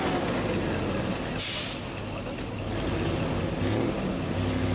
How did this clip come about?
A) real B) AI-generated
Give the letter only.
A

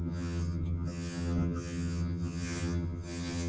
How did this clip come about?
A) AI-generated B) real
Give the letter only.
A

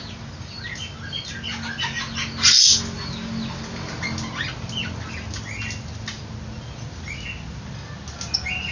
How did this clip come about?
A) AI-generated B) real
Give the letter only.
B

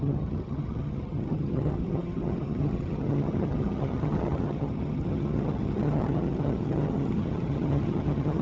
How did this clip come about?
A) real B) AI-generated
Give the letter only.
B